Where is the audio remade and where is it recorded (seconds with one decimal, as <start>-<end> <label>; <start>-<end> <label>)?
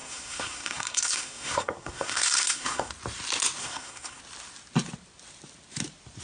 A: 0.0-2.9 remade; 2.9-3.6 recorded; 3.6-4.2 remade; 4.2-6.2 recorded